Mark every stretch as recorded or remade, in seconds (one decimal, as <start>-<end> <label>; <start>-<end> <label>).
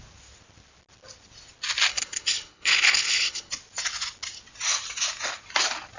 0.0-1.9 recorded; 1.9-3.5 remade; 3.5-6.0 recorded